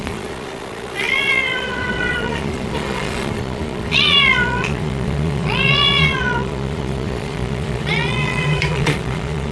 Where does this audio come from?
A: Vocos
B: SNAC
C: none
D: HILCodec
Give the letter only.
A